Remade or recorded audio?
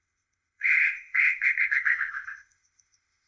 remade